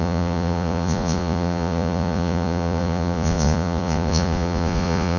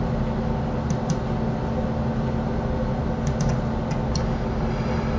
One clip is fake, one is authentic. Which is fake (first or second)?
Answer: first